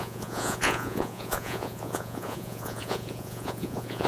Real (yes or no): no